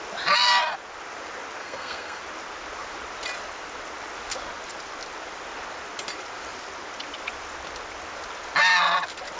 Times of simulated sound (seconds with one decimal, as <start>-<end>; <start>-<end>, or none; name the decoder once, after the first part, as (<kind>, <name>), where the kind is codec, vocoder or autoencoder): 1.6-2.2 (codec, SNAC)